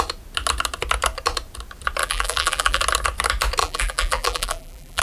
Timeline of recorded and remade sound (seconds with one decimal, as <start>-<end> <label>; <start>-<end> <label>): 0.0-2.0 recorded; 2.0-2.8 remade; 2.8-3.6 recorded; 3.6-5.0 remade